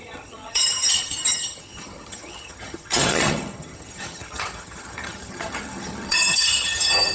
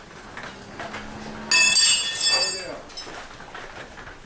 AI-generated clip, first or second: first